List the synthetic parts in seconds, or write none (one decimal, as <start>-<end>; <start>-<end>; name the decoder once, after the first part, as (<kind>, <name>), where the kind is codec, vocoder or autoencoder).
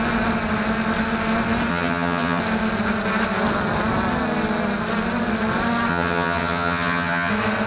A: 1.7-2.4 (vocoder, HiFi-GAN); 5.9-7.3